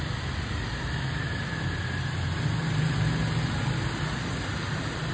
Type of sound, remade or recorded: recorded